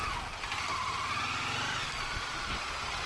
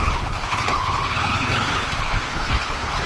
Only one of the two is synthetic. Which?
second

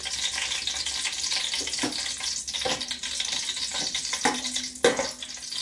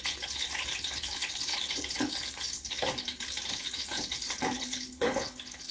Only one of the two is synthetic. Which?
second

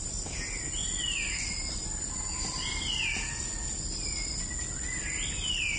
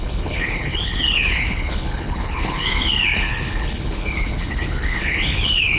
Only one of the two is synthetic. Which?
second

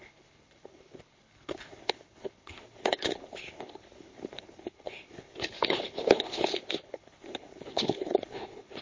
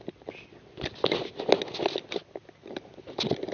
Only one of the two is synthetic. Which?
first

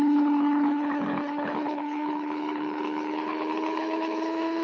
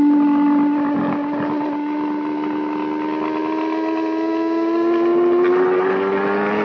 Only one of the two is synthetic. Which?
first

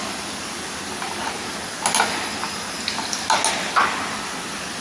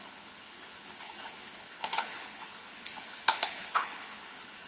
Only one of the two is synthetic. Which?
second